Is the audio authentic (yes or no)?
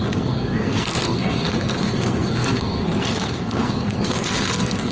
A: no